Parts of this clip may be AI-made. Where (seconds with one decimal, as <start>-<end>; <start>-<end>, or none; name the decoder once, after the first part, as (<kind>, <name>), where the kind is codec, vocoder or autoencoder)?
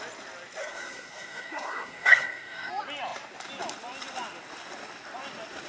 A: 0.6-2.7 (codec, SNAC)